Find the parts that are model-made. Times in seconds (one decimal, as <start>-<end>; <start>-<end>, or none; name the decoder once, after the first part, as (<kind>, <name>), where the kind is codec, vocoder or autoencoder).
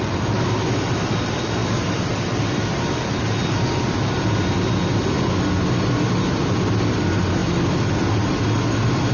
none